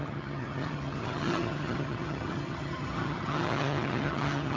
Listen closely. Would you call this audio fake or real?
fake